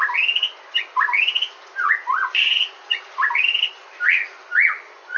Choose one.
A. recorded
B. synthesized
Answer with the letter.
B